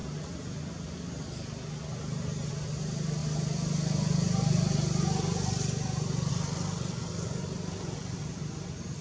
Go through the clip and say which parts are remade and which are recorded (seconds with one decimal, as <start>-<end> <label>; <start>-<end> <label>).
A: 0.0-9.0 recorded